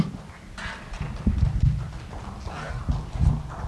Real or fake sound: real